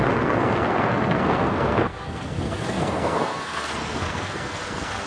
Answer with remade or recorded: remade